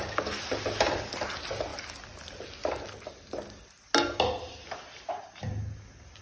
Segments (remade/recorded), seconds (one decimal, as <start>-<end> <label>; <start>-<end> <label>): 0.0-6.2 recorded